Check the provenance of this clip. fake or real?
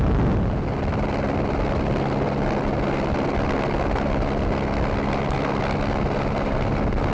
real